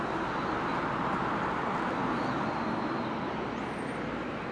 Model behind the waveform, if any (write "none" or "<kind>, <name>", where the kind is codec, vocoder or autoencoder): none